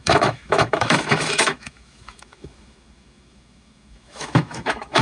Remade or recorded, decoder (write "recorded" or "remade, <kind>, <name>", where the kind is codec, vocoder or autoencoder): remade, autoencoder, DAC-VAE